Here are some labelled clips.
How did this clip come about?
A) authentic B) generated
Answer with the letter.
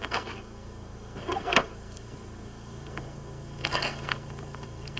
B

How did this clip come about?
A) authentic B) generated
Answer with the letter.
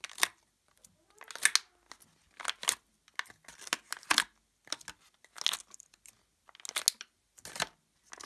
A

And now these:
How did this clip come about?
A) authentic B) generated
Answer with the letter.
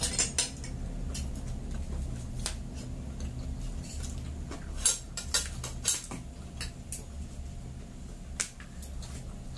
A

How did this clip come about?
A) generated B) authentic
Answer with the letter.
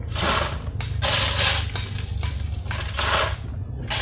B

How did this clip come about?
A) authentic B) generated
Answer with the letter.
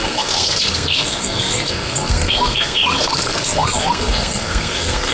B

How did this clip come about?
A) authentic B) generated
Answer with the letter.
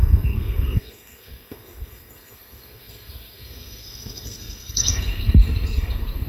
B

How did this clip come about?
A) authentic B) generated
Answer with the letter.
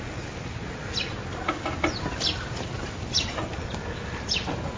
A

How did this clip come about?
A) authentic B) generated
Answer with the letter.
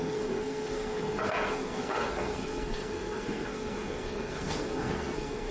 B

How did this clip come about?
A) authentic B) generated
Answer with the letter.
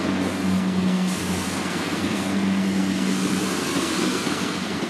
B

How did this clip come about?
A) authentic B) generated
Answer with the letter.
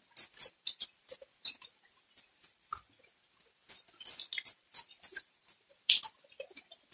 A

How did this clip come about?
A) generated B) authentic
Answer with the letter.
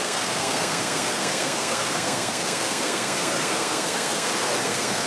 A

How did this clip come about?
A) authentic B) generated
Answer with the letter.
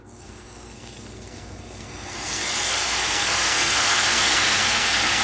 B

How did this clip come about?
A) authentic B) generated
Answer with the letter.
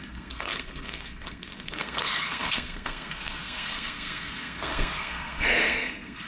B